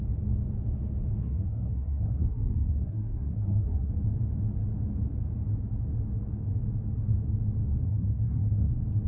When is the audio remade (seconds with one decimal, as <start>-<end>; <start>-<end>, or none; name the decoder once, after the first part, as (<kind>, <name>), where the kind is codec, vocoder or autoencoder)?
1.2-3.9 (codec, SNAC); 7.9-8.7